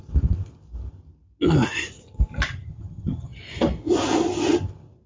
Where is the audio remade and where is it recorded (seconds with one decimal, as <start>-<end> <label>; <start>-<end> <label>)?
0.0-2.5 recorded; 2.5-3.4 remade; 3.4-5.1 recorded